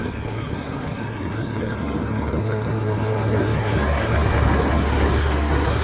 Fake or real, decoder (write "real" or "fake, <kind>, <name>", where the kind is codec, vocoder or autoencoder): fake, codec, SNAC